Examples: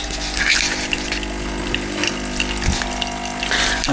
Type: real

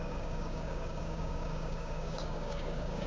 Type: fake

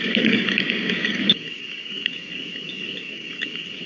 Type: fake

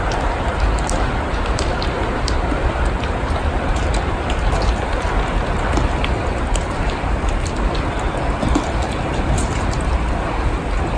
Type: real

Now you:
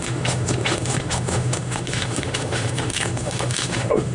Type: fake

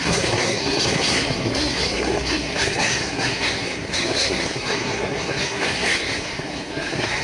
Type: fake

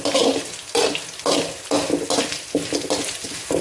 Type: real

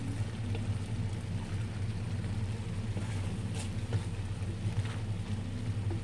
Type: real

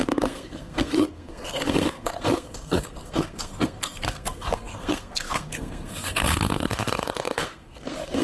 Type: fake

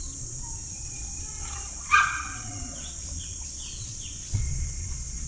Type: fake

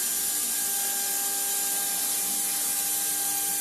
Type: real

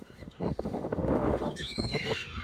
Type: fake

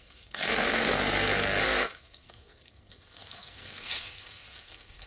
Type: fake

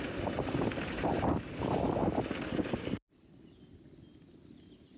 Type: real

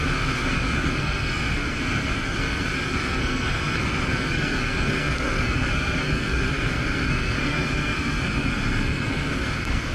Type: fake